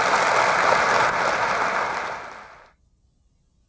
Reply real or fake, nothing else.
real